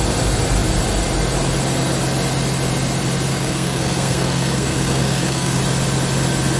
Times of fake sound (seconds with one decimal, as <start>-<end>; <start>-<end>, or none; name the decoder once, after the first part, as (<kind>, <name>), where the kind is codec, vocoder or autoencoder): 3.3-5.6 (codec, SNAC)